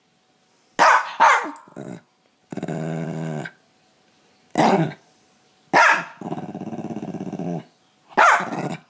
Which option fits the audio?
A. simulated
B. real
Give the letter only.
B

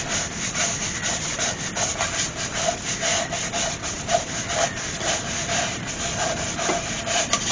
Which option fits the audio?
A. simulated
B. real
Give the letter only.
A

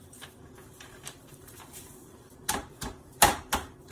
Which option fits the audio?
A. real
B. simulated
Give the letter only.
B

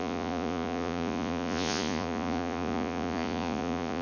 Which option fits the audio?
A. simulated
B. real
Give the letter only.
A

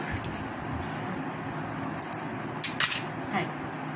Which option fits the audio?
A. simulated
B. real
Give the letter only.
B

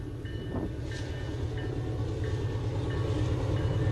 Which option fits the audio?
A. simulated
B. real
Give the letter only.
B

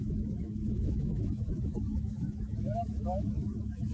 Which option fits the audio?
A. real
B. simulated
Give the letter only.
B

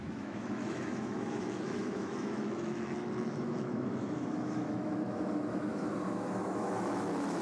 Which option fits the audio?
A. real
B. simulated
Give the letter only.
B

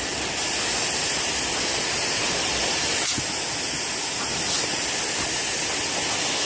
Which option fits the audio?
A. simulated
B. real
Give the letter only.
B